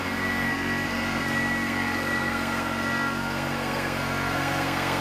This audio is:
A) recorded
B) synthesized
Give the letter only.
B